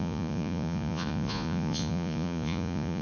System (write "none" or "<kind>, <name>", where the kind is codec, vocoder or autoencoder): vocoder, Vocos